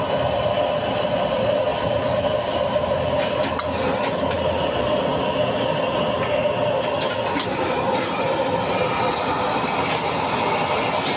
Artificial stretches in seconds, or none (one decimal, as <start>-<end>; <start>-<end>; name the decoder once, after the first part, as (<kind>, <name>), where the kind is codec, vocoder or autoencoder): 1.7-2.9 (vocoder, BigVGAN v2)

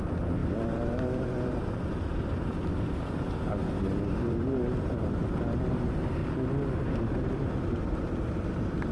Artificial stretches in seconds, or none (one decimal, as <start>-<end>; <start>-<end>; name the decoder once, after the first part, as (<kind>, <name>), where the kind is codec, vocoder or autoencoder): 0.0-3.6 (vocoder, BigVGAN v2); 4.2-5.2; 5.7-6.2; 6.9-8.9

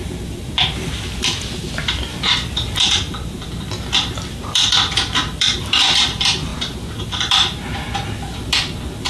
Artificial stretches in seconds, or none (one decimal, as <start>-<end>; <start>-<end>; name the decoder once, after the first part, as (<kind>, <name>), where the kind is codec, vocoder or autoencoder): 0.0-6.5 (vocoder, BigVGAN v2); 7.0-9.1

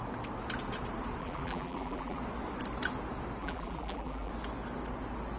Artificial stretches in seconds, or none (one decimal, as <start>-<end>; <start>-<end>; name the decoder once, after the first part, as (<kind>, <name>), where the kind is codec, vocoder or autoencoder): 1.2-2.2 (vocoder, BigVGAN v2); 3.4-4.3

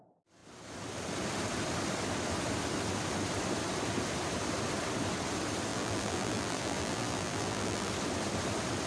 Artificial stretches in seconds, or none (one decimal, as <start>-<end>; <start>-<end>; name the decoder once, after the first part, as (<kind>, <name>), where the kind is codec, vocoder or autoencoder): 5.7-7.9 (vocoder, BigVGAN v2)

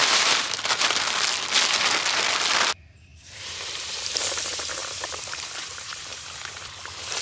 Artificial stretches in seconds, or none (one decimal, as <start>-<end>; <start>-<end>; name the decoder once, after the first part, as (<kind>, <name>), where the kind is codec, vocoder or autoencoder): 0.0-0.6 (vocoder, BigVGAN v2); 3.1-4.2; 4.8-6.2

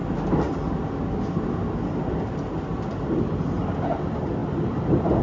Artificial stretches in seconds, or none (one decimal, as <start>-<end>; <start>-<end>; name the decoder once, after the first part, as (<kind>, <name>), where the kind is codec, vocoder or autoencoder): none

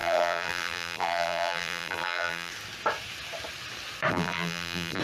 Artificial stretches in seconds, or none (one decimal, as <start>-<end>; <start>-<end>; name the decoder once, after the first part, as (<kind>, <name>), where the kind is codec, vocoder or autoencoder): 0.0-2.5 (vocoder, BigVGAN v2); 4.1-5.0